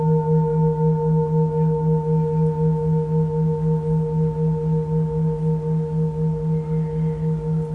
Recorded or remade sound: recorded